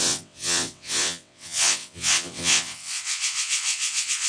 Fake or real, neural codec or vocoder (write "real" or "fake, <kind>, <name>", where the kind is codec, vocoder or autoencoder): fake, vocoder, WaveNeXt